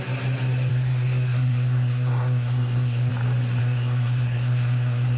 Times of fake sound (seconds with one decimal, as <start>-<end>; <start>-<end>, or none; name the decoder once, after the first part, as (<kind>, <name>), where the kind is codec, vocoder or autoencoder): 0.7-3.1 (codec, SNAC); 3.6-5.2